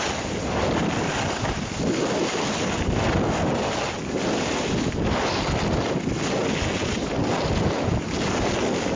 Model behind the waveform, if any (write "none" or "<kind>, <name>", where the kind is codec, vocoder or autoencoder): none